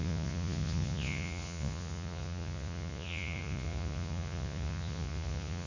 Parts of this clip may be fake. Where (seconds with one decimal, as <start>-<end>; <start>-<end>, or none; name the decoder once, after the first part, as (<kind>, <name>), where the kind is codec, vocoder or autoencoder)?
0.0-5.7 (vocoder, Vocos)